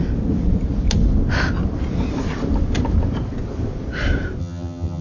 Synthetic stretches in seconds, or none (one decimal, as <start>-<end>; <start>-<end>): 4.4-5.0